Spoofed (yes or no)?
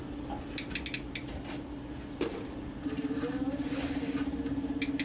no